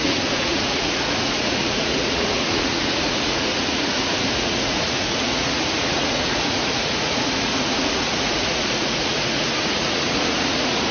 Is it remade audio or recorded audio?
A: remade